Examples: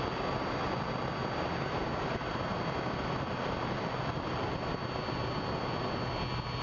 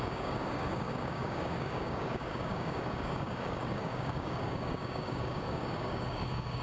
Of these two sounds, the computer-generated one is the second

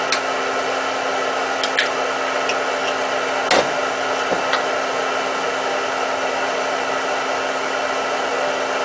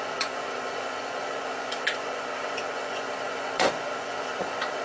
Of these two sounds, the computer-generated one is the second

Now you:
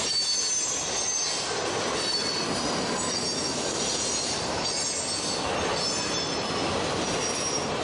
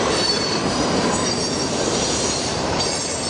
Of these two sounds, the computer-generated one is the second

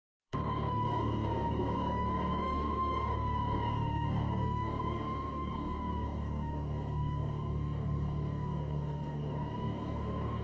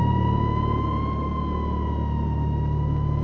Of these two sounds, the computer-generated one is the first